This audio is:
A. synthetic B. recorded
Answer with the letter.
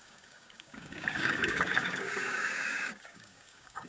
A